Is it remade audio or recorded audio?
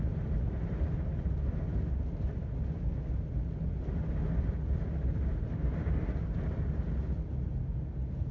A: recorded